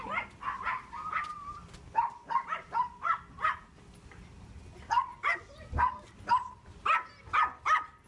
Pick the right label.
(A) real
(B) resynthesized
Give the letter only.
A